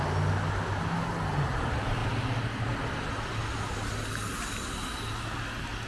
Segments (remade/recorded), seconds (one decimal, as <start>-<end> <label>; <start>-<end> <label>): 0.0-5.9 recorded